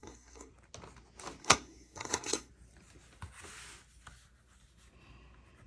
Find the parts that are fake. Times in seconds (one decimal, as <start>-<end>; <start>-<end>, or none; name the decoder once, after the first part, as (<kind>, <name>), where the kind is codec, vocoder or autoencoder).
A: 0.0-0.5 (codec, SNAC); 1.4-2.5